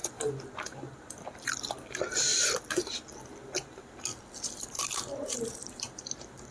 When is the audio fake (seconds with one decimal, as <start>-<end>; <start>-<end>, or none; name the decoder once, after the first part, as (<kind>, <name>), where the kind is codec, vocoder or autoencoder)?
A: 4.1-4.8 (vocoder, BigVGAN v2); 5.6-6.5